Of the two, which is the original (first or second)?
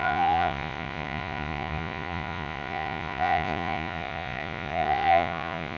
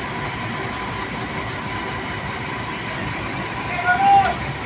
second